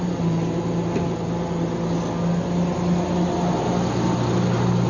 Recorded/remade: recorded